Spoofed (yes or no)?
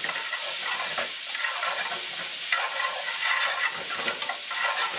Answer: no